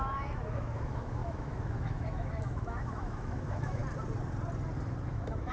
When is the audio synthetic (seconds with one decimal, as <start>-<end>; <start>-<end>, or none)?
0.0-3.8; 5.1-5.5